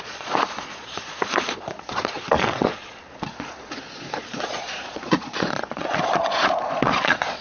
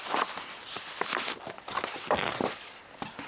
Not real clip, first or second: first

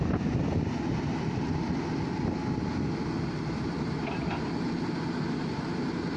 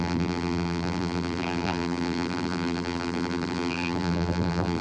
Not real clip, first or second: second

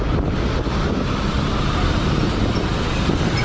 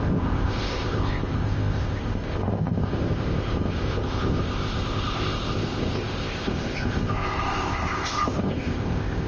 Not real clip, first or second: second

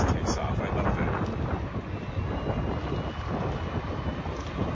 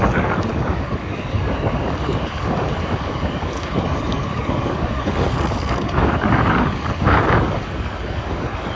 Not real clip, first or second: second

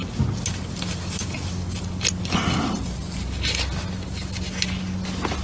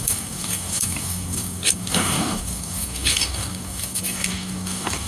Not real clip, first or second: second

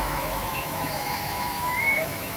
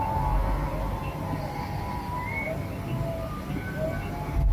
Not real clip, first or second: first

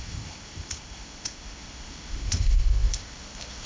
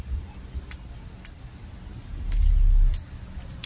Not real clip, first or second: first